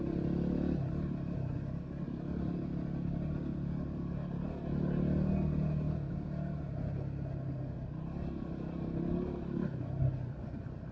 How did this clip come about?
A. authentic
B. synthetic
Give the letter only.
A